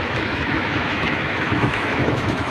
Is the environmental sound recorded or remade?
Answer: remade